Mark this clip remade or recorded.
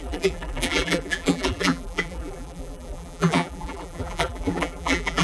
remade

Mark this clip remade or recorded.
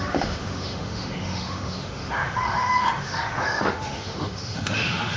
remade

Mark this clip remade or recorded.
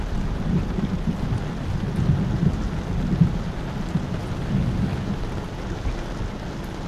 recorded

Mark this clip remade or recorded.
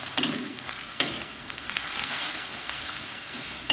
remade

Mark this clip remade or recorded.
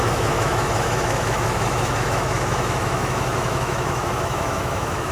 remade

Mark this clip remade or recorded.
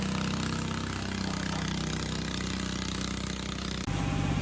recorded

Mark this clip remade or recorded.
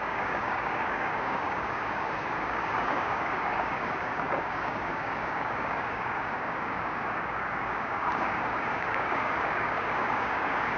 remade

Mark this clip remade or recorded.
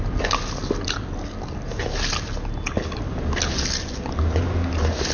recorded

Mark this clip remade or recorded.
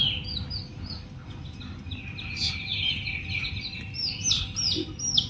recorded